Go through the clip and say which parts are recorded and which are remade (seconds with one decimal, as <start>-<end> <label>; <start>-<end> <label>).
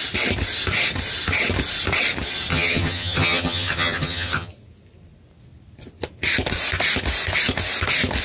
0.0-2.5 recorded; 2.5-4.5 remade; 4.5-8.2 recorded